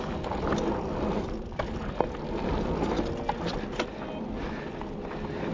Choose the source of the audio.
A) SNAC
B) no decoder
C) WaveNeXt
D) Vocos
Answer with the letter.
B